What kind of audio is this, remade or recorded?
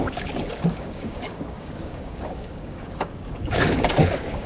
remade